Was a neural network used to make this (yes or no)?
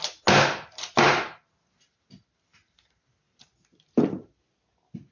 no